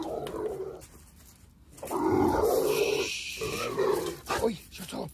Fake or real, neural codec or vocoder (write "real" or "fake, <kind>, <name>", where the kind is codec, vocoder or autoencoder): real